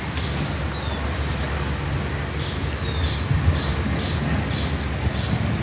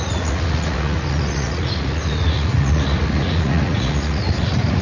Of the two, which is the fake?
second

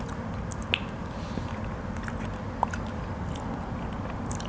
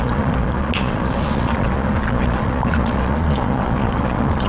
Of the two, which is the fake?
second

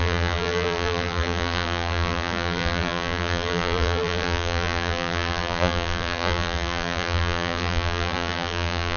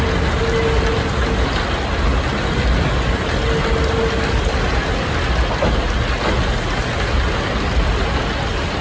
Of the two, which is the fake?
first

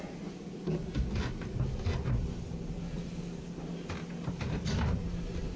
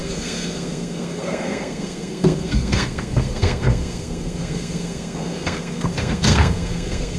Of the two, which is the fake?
second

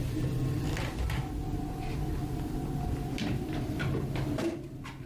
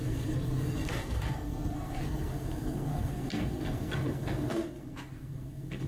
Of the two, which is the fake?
second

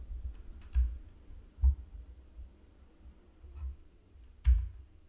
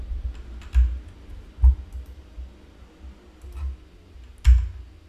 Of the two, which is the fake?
first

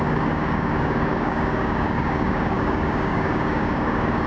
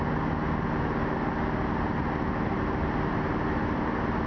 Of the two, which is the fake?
first